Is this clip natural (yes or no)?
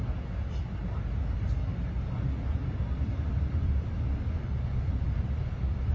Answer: yes